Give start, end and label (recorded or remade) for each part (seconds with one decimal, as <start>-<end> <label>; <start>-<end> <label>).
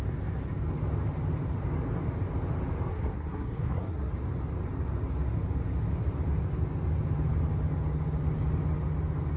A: 0.0-2.9 recorded; 2.9-4.1 remade; 4.1-9.4 recorded